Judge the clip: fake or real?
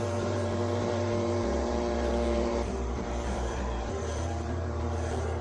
fake